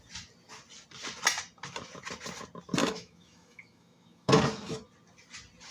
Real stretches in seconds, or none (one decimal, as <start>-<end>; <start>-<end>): 0.0-2.8; 4.4-5.7